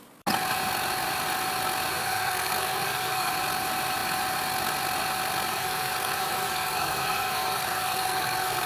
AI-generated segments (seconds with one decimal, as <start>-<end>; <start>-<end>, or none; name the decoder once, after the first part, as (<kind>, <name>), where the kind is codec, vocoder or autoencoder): 1.9-3.3 (codec, SNAC); 5.5-8.7